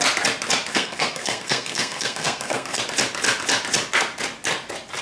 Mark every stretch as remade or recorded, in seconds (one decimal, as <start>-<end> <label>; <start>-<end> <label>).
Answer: 0.0-0.7 recorded; 0.7-2.8 remade; 2.8-5.0 recorded